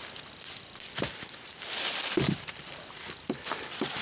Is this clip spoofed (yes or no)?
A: no